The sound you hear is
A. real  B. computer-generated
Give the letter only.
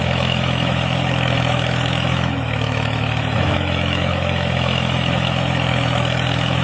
B